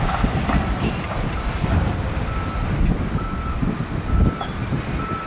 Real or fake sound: real